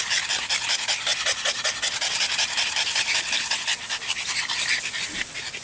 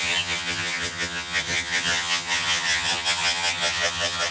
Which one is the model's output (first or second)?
second